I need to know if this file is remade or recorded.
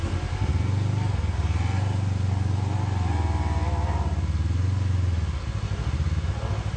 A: recorded